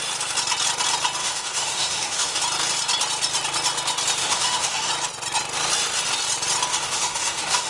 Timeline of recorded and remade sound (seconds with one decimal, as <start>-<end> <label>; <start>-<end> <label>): 0.0-1.2 recorded; 1.2-2.4 remade; 2.4-4.2 recorded; 4.2-4.9 remade; 4.9-6.7 recorded; 6.7-7.7 remade